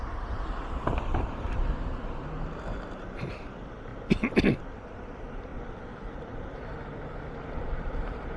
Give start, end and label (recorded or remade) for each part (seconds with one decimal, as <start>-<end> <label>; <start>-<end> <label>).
0.0-3.9 remade; 3.9-4.6 recorded; 4.6-5.5 remade; 5.5-7.2 recorded; 7.2-8.4 remade

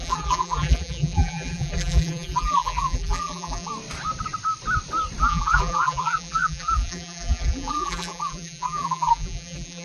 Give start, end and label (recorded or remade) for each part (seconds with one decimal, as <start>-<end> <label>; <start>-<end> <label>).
0.0-3.7 remade; 3.7-5.2 recorded; 5.2-9.8 remade

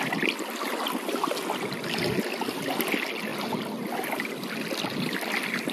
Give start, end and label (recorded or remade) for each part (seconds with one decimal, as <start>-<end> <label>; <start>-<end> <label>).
0.0-5.7 recorded

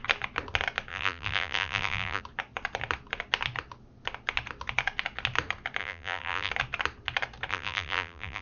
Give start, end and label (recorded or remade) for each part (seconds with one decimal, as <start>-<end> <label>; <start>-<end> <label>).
0.0-0.9 recorded; 0.9-2.2 remade; 2.2-5.8 recorded; 5.8-6.5 remade; 6.5-7.5 recorded; 7.5-8.4 remade

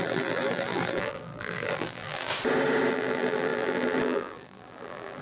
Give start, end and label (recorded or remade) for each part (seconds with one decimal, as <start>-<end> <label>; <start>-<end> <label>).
0.0-2.3 remade; 2.3-2.9 recorded; 2.9-5.2 remade

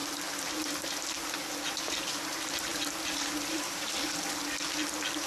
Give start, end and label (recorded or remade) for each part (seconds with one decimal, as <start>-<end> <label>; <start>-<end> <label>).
0.0-0.9 remade; 0.9-2.7 recorded; 2.7-4.4 remade; 4.4-5.3 recorded

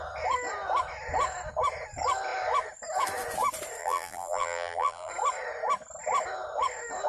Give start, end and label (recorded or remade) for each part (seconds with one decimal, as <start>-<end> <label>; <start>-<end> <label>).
0.0-3.8 recorded; 3.8-5.1 remade; 5.1-7.1 recorded

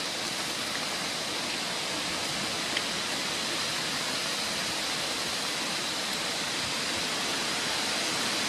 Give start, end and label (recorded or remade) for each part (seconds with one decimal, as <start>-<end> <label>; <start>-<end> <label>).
0.0-8.5 recorded